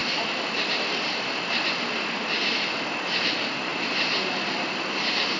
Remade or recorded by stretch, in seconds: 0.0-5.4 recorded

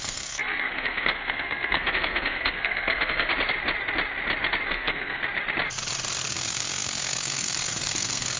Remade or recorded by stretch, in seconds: 0.0-3.3 remade; 3.3-4.7 recorded; 4.7-5.2 remade; 5.2-6.3 recorded; 6.3-8.4 remade

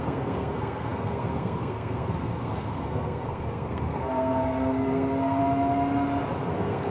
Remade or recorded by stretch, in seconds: 0.0-5.4 remade; 5.4-6.5 recorded; 6.5-6.9 remade